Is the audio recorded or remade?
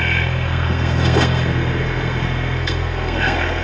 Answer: remade